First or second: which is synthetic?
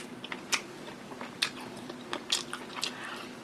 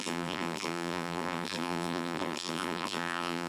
second